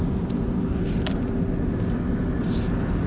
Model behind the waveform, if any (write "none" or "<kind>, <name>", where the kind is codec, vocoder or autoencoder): none